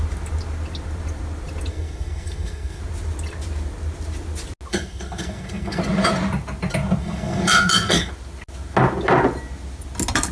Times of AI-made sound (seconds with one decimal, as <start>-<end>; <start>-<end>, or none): 1.7-2.8; 4.7-5.8; 7.0-8.1